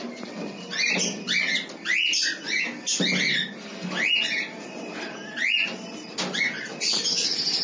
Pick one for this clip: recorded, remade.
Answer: recorded